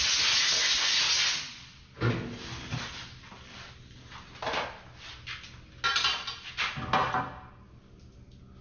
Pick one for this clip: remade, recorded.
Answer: recorded